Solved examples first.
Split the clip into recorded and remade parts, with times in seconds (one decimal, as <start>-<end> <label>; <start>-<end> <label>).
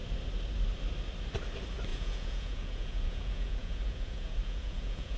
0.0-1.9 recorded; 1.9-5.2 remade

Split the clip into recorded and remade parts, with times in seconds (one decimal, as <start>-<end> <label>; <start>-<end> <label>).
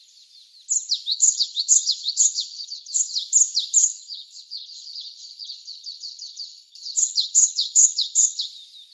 0.0-1.1 recorded; 1.1-3.2 remade; 3.2-3.8 recorded; 3.8-8.4 remade; 8.4-8.9 recorded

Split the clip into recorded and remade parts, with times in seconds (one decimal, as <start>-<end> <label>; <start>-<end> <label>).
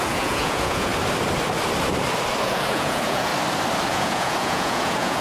0.0-0.9 remade; 0.9-2.4 recorded; 2.4-3.3 remade; 3.3-3.9 recorded; 3.9-5.2 remade